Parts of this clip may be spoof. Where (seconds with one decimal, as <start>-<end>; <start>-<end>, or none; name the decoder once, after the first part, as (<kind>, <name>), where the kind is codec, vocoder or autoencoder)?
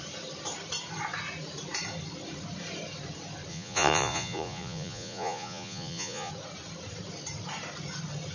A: 3.5-6.3 (vocoder, Vocos)